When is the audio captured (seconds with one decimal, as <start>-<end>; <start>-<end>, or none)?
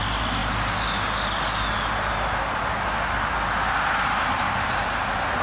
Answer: 0.0-5.4